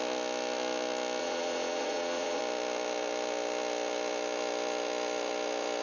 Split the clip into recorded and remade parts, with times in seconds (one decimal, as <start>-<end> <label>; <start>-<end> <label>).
0.0-1.2 recorded; 1.2-2.4 remade; 2.4-5.8 recorded